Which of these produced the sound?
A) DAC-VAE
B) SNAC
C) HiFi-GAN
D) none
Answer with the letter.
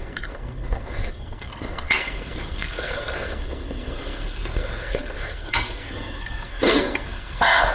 B